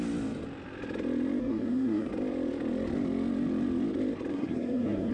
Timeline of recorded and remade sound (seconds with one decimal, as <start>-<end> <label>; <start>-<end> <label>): 0.0-1.4 recorded; 1.4-2.1 remade; 2.1-4.3 recorded; 4.3-5.1 remade